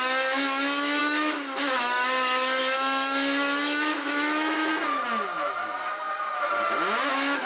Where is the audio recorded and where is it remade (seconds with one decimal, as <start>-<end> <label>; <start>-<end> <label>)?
0.0-4.7 remade; 4.7-7.1 recorded; 7.1-7.5 remade